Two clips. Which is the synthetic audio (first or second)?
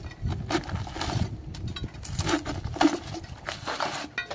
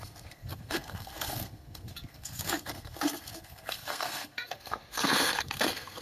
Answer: second